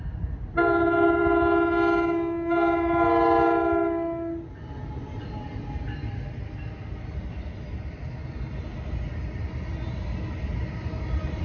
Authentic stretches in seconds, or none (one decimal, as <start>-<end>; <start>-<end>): 0.0-11.4

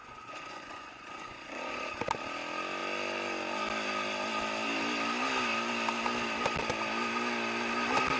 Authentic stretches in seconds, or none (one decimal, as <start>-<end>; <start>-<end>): 2.0-8.2

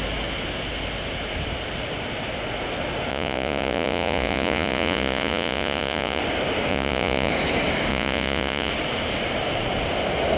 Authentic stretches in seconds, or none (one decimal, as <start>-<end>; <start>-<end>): 0.0-3.1; 6.2-6.7; 7.3-7.9; 8.7-10.4

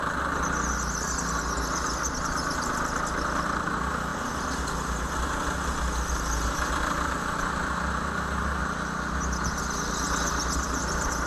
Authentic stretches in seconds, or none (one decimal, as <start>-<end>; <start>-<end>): 0.0-11.3